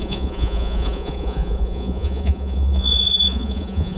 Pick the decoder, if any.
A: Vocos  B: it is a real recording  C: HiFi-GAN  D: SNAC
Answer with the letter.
A